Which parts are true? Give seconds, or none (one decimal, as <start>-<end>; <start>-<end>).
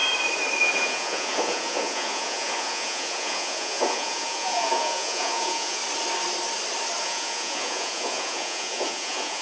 0.0-0.6; 5.8-7.0